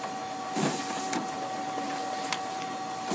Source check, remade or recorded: recorded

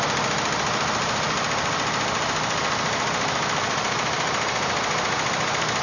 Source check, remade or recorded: recorded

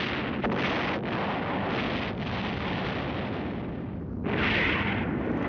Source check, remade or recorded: recorded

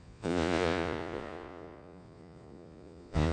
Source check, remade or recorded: remade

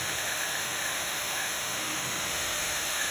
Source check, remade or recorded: remade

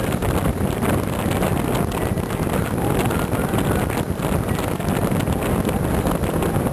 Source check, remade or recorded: recorded